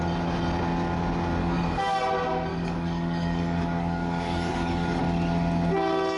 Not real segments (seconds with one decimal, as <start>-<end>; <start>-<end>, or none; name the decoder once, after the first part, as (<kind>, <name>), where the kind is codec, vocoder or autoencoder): 1.4-2.0 (codec, DAC); 2.5-5.0

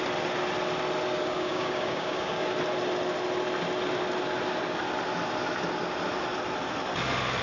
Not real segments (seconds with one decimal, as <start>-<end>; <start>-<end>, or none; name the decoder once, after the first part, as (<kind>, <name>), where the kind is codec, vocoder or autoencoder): 1.2-2.5 (codec, DAC)

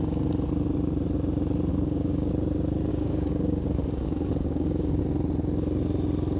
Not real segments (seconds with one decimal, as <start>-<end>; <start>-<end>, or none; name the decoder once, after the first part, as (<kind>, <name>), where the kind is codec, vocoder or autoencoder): 1.7-2.3 (codec, DAC); 2.9-5.0